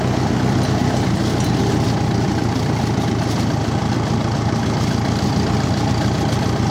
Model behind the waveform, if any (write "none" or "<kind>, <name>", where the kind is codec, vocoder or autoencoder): none